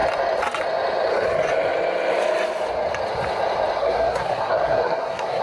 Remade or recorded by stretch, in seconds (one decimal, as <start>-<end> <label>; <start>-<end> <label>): 0.0-3.8 recorded; 3.8-5.4 remade